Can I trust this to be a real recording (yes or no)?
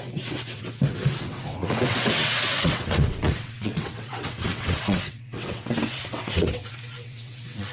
no